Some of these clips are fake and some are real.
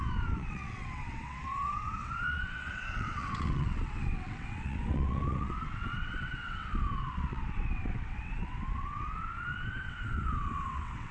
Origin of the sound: fake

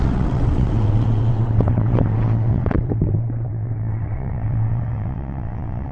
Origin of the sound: fake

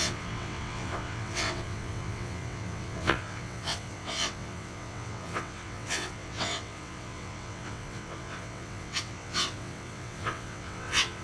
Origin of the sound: fake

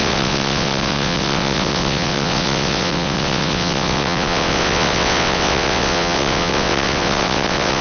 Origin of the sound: fake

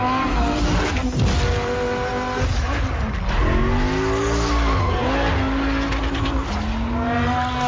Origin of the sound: real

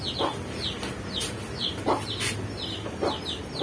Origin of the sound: real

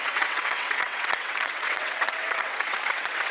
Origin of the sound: fake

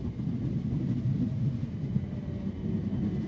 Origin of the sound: real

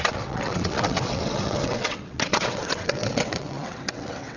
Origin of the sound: fake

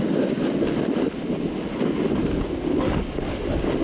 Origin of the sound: real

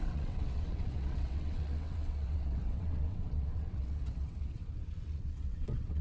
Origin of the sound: fake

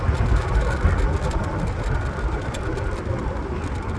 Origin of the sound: real